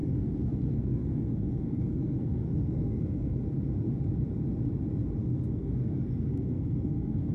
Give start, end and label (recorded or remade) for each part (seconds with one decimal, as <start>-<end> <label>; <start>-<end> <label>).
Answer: 0.0-3.4 remade; 3.4-5.2 recorded; 5.2-7.3 remade